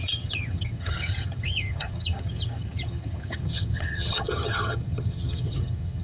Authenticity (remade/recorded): remade